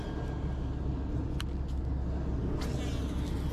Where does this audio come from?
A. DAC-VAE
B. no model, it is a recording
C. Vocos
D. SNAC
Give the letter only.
B